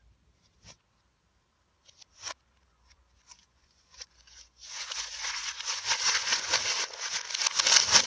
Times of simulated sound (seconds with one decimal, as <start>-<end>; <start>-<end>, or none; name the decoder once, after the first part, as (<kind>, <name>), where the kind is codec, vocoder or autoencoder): 2.7-6.5 (vocoder, Vocos)